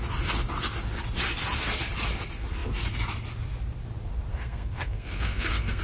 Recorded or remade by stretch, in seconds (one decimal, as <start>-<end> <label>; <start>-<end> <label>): 0.0-4.3 recorded; 4.3-5.8 remade